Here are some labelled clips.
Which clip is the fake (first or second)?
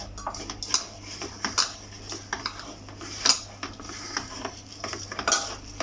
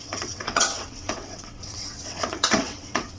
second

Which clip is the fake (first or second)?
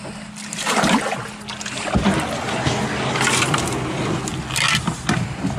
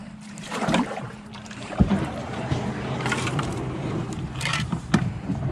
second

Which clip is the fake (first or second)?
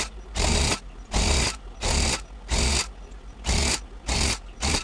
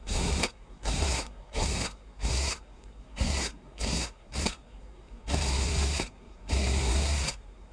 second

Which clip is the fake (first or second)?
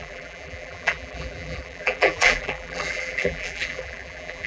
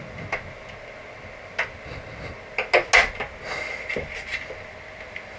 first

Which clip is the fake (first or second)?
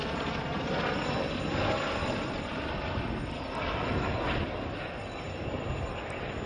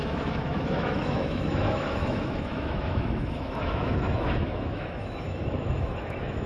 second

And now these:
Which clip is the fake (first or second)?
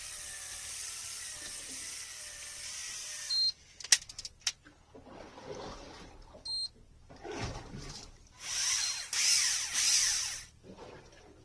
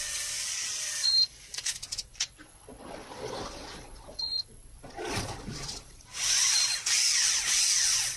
second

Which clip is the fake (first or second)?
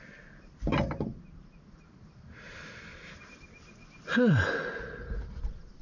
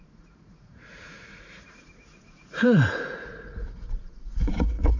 second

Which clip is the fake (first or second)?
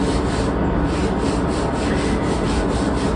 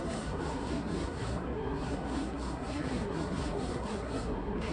second